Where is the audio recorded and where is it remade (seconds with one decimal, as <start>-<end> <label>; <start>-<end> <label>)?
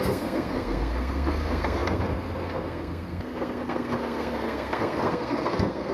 0.0-5.9 remade